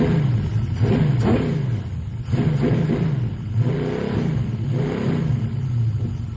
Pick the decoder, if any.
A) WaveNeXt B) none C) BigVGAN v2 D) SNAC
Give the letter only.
B